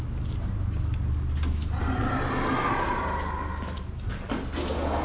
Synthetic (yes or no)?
no